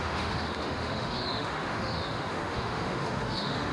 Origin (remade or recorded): remade